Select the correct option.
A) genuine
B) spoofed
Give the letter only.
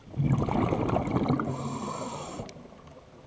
A